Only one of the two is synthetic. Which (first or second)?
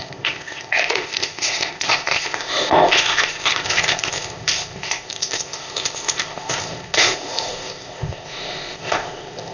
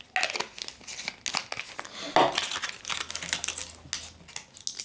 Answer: first